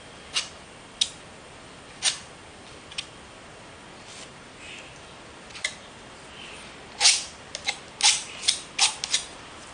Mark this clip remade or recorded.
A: recorded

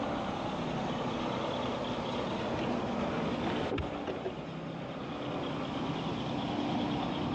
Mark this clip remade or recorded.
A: recorded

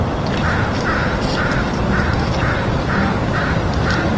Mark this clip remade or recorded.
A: recorded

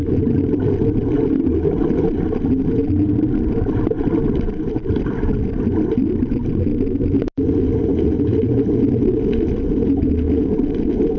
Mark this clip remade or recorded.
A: recorded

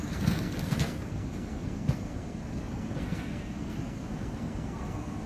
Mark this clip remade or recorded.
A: remade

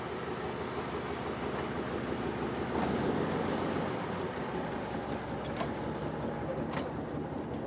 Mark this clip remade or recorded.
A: recorded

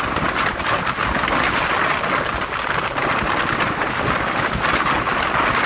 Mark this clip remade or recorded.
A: recorded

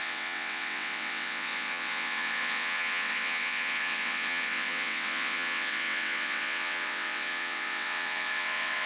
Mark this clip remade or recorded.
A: remade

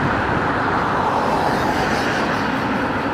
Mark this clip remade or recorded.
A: recorded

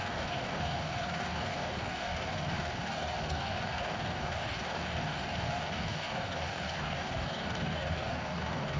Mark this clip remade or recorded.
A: remade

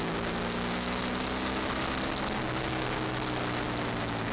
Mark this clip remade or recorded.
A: recorded